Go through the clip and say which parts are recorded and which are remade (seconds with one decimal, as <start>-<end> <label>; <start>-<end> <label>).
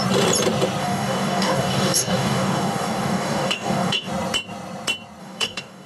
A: 0.0-0.8 recorded; 0.8-4.1 remade; 4.1-5.2 recorded; 5.2-5.9 remade